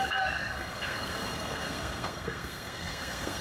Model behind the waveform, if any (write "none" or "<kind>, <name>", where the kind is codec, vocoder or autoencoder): codec, SNAC